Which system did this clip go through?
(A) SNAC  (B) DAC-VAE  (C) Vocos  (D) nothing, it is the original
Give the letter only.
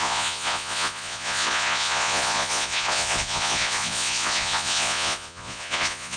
C